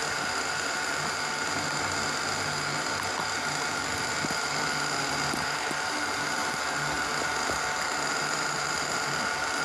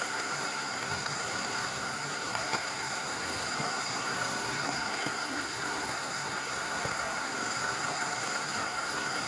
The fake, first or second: second